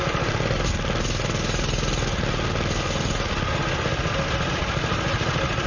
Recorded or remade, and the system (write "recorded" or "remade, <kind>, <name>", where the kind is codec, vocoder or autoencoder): recorded